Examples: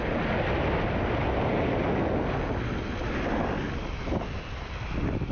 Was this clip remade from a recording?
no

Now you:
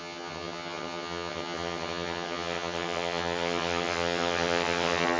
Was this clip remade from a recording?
yes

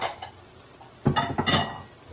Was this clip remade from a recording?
no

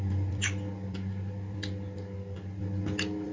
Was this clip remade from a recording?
no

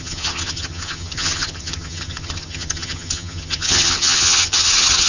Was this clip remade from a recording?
yes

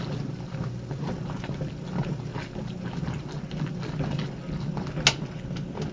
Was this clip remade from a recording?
no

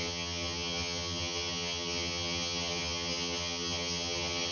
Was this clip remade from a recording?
yes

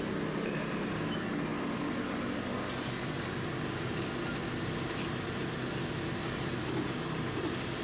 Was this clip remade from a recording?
no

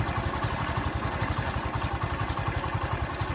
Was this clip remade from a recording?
no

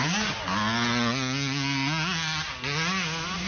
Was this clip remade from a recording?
no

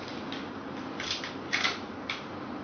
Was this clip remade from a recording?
no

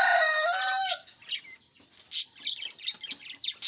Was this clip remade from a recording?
no